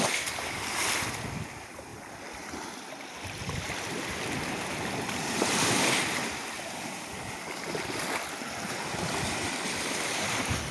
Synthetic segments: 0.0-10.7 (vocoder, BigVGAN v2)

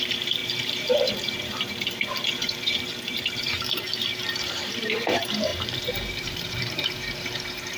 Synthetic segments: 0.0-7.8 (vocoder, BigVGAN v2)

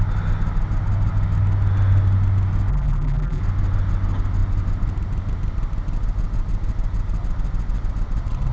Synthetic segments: 2.7-3.4 (vocoder, BigVGAN v2)

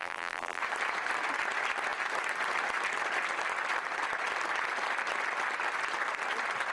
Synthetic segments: 0.0-0.6 (vocoder, BigVGAN v2)